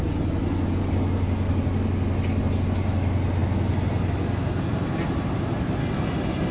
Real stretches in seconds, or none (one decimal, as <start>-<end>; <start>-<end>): 0.0-5.8